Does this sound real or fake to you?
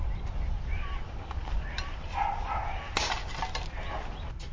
real